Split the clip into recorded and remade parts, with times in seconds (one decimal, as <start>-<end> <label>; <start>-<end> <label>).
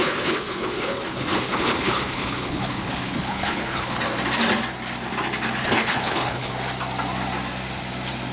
0.0-4.0 remade; 4.0-5.6 recorded; 5.6-6.5 remade; 6.5-8.3 recorded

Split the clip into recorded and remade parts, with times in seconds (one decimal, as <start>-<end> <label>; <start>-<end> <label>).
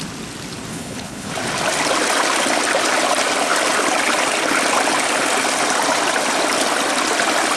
0.0-0.7 recorded; 0.7-1.3 remade; 1.3-7.6 recorded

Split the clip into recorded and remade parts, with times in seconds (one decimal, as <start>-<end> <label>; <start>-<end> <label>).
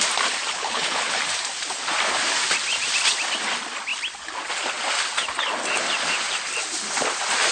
0.0-0.5 recorded; 0.5-1.2 remade; 1.2-7.5 recorded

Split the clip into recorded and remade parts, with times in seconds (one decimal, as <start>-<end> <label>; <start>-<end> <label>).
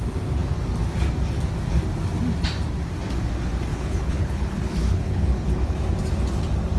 0.0-3.7 recorded; 3.7-5.7 remade; 5.7-6.8 recorded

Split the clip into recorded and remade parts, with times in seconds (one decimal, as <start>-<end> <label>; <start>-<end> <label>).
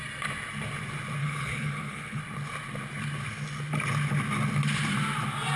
0.0-1.2 recorded; 1.2-2.2 remade; 2.2-5.6 recorded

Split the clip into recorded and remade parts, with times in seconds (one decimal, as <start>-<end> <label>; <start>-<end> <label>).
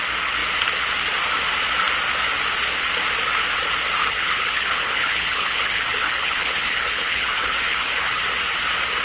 0.0-4.0 recorded; 4.0-8.2 remade; 8.2-9.0 recorded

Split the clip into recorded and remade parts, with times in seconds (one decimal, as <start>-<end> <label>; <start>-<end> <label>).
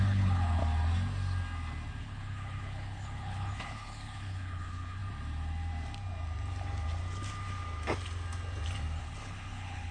0.0-0.6 remade; 0.6-2.0 recorded; 2.0-5.0 remade; 5.0-9.0 recorded; 9.0-9.9 remade